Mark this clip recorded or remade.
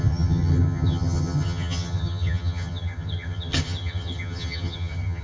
remade